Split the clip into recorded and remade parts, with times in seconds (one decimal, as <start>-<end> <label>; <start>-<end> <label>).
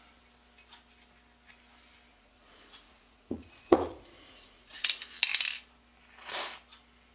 0.0-2.1 recorded; 2.1-5.0 remade; 5.0-7.1 recorded